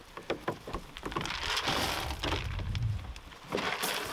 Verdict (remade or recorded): recorded